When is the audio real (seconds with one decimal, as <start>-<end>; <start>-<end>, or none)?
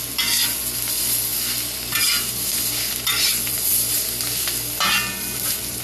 0.0-5.8